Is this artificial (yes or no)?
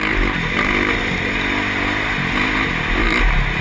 no